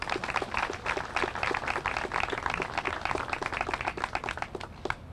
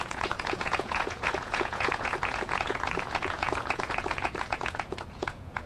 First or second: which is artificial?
second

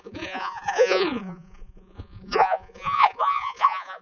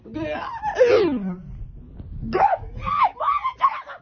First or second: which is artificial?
first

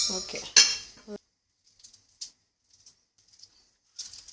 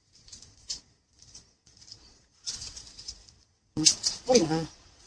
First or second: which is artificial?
second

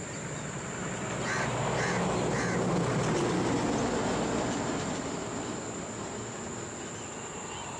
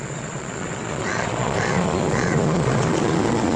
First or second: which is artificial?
second